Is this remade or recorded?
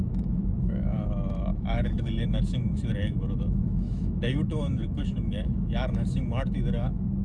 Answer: remade